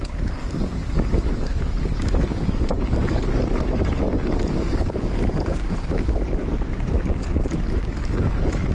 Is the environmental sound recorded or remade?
remade